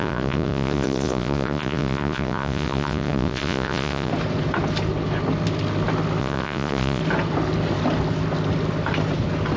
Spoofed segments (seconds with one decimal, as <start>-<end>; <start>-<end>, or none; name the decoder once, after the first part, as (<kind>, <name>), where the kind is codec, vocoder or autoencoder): 0.0-4.1 (vocoder, Vocos); 6.2-7.0